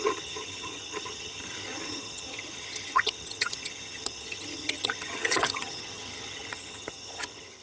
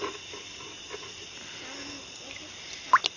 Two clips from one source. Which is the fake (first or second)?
first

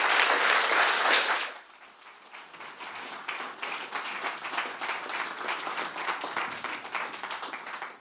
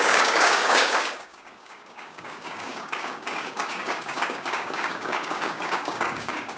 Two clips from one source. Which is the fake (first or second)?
second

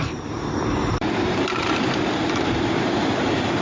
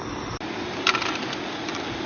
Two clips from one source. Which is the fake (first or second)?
first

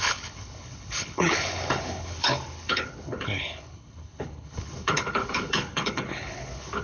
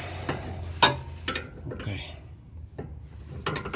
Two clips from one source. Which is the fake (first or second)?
first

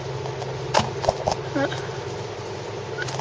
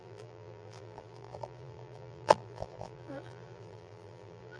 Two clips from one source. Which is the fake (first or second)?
second